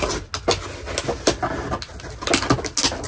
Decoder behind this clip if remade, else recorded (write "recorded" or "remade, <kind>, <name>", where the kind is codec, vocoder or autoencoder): recorded